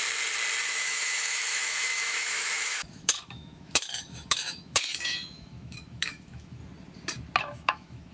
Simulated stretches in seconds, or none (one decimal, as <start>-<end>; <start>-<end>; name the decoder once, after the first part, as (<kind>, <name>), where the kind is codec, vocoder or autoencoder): 0.6-6.6 (autoencoder, DAC-VAE); 7.4-8.1